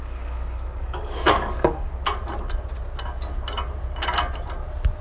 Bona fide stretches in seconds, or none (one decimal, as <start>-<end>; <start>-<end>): 2.0-5.0